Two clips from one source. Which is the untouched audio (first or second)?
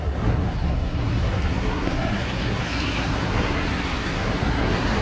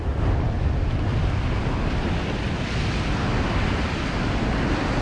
second